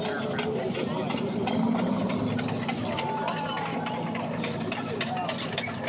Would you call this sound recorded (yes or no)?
yes